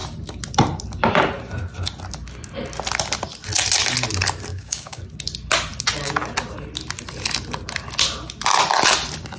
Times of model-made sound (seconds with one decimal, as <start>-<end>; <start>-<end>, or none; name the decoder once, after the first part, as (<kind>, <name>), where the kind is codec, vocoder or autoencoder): 4.5-5.0 (codec, DAC)

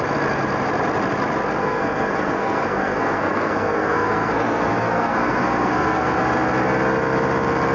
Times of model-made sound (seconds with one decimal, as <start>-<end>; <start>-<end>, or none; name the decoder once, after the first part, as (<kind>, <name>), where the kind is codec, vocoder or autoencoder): 1.6-6.2 (codec, SNAC)

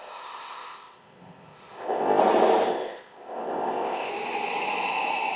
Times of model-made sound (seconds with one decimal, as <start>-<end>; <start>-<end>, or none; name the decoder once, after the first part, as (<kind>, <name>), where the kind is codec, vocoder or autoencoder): 0.0-2.2 (codec, ZipCodec); 2.7-4.1

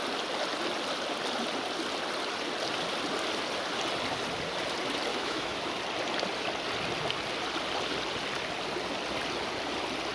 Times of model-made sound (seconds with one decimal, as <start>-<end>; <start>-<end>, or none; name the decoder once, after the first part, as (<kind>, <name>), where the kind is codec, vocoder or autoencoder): 5.1-5.8 (autoencoder, DAC-VAE)

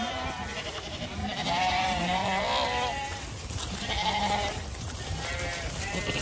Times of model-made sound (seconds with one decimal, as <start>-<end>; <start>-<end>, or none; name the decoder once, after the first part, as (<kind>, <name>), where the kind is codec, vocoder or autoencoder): 0.0-1.2 (vocoder, BigVGAN v2); 1.7-2.2

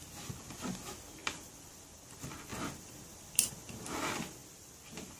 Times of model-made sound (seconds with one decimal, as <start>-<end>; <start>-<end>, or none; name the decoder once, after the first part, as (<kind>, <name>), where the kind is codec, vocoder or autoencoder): 1.2-1.7 (vocoder, BigVGAN v2); 2.5-3.5

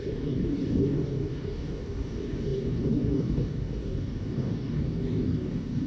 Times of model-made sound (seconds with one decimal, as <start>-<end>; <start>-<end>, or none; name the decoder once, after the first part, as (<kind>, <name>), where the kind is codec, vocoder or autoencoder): 0.0-5.9 (codec, DAC)